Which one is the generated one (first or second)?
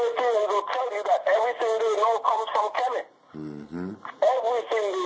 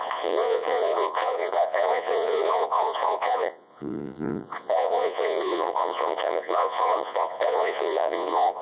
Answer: second